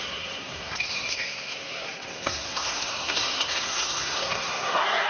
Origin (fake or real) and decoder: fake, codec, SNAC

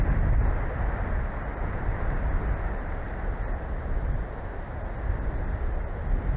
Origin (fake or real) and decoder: real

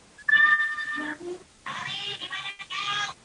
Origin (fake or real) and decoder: real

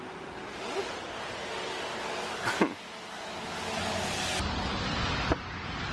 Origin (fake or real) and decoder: real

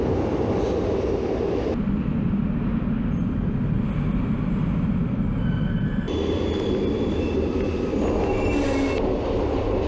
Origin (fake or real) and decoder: real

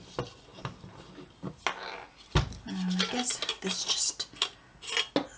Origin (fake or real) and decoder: real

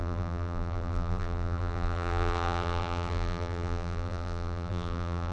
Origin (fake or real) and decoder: fake, vocoder, BigVGAN v2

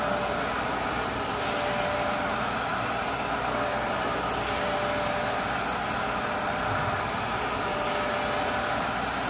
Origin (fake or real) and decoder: real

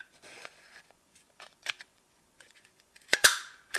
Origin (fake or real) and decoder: fake, vocoder, Vocos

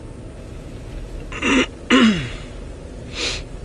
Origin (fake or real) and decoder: real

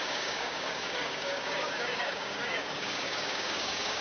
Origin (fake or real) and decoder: fake, codec, DAC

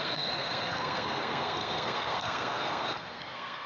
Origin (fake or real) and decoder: fake, codec, SNAC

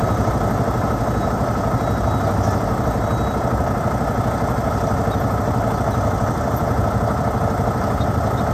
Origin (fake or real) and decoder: real